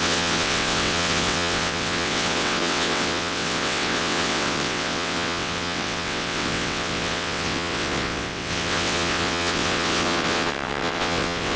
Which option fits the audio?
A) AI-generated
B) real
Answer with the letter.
A